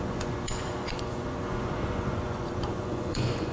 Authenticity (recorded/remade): remade